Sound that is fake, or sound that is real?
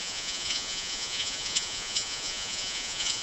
fake